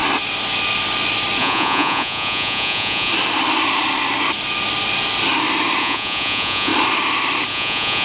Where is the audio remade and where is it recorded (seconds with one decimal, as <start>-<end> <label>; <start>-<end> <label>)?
0.0-1.4 recorded; 1.4-3.1 remade; 3.1-5.8 recorded; 5.8-6.7 remade; 6.7-7.5 recorded; 7.5-8.0 remade